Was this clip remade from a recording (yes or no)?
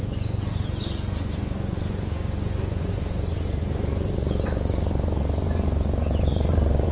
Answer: yes